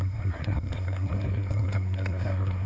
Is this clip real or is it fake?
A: fake